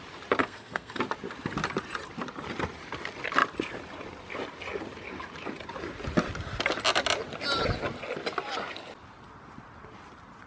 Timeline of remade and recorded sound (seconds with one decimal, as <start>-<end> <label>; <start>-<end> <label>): 0.0-0.4 recorded; 0.4-1.0 remade; 1.0-10.5 recorded